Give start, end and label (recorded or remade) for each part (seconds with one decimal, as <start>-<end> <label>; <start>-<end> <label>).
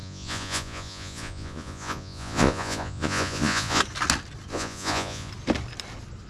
0.0-3.8 remade; 3.8-4.5 recorded; 4.5-5.3 remade; 5.3-6.3 recorded